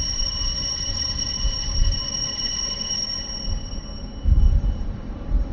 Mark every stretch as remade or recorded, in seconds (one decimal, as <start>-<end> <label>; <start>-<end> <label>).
0.0-5.5 remade